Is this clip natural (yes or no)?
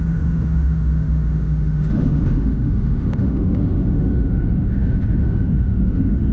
no